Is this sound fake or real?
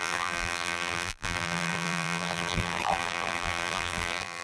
fake